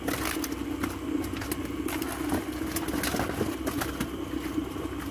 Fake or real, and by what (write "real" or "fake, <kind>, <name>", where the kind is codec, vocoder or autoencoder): real